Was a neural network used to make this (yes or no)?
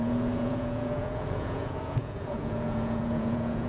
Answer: yes